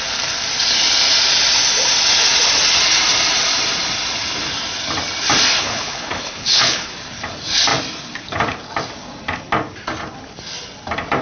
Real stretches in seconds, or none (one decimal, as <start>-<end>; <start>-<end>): 0.0-5.6; 6.9-11.2